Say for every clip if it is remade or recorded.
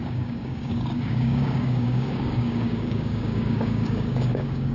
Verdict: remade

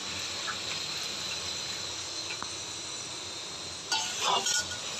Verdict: recorded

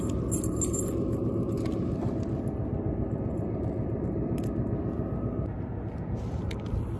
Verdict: recorded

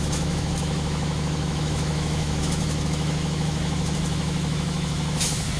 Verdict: remade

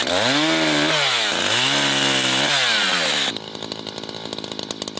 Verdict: recorded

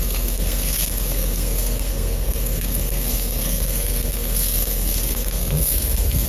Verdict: remade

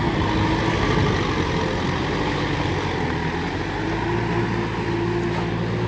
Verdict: recorded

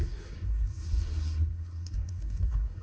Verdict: remade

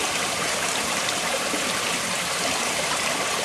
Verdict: remade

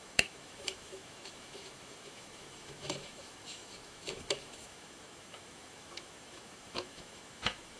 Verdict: remade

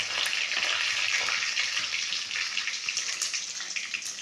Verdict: recorded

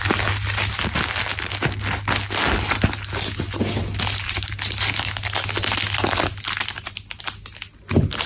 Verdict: recorded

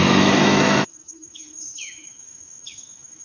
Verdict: remade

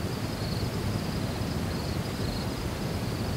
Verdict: recorded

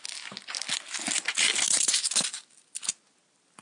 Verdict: recorded